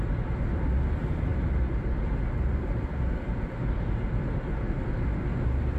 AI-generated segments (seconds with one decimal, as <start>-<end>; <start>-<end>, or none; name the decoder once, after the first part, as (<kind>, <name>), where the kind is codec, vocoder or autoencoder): none